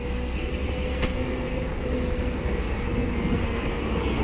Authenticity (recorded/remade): remade